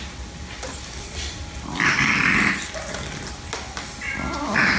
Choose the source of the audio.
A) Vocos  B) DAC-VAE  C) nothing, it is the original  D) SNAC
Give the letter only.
C